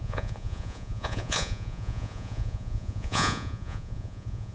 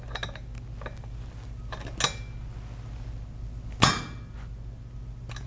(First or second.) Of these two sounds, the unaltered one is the second